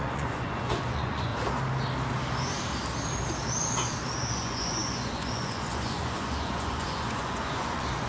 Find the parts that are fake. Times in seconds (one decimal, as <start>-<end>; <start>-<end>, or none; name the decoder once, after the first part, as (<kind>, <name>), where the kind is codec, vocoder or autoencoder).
0.0-1.3 (vocoder, Vocos); 4.3-8.1